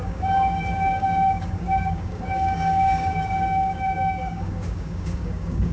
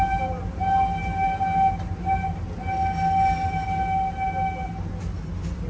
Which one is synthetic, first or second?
first